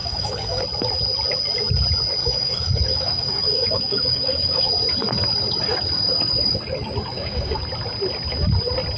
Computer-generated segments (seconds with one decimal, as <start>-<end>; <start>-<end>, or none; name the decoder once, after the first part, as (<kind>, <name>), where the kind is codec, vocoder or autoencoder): 0.0-0.6 (codec, DAC); 2.2-4.7; 7.1-7.6